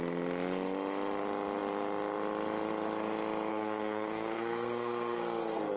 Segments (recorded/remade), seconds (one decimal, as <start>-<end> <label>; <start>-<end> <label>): 0.0-3.5 recorded; 3.5-5.8 remade